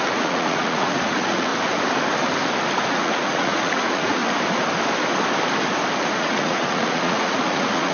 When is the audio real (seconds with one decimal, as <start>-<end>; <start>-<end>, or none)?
1.5-2.9; 4.2-6.1